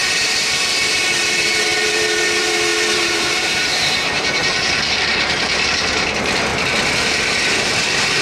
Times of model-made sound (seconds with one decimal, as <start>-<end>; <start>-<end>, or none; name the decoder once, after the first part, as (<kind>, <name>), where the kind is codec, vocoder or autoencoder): 0.0-6.5 (vocoder, BigVGAN v2); 7.6-8.2